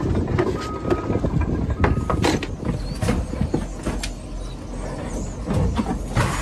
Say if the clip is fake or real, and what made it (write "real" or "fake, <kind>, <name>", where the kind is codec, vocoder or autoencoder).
real